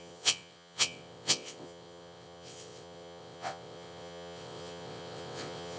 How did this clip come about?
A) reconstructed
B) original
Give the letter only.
A